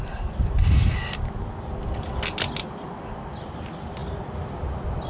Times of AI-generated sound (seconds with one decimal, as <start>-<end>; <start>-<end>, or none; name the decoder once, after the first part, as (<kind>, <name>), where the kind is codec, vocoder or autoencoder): none